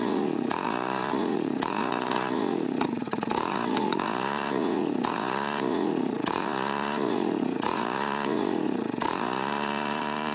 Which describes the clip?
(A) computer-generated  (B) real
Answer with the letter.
A